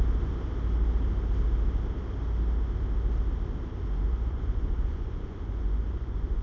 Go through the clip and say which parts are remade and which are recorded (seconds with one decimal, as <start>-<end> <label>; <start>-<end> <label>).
0.0-3.8 recorded; 3.8-6.4 remade